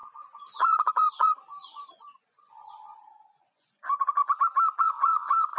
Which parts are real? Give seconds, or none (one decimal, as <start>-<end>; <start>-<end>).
4.2-4.8